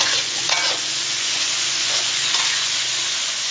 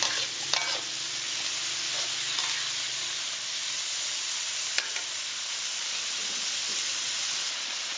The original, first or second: second